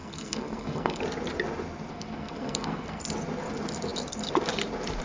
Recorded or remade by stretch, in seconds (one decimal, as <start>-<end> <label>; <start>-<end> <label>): 0.0-1.0 remade; 1.0-1.9 recorded; 1.9-3.0 remade; 3.0-5.0 recorded